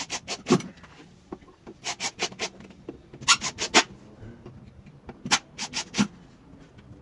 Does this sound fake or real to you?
real